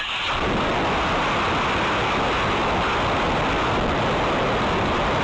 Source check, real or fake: real